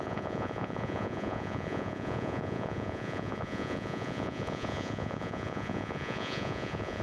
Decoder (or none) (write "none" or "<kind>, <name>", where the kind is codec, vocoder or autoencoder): vocoder, Vocos